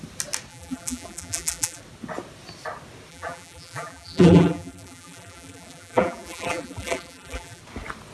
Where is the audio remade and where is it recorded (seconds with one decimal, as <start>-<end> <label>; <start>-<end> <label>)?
0.0-0.5 recorded; 0.5-1.8 remade; 1.8-3.1 recorded; 3.1-7.6 remade; 7.6-8.1 recorded